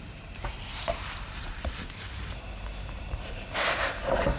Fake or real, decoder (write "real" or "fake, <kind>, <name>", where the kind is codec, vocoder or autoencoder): fake, vocoder, BigVGAN v2